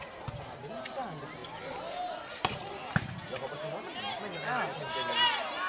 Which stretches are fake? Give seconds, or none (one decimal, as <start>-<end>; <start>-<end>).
none